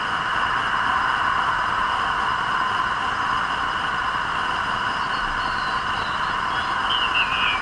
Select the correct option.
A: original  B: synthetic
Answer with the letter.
A